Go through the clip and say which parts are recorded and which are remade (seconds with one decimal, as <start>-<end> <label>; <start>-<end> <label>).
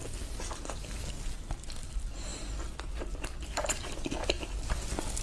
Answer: 0.0-5.2 recorded